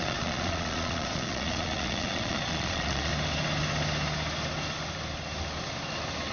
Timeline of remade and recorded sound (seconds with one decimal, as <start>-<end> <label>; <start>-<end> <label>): 0.0-3.1 remade; 3.1-6.3 recorded